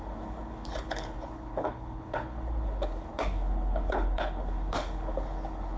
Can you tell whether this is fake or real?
fake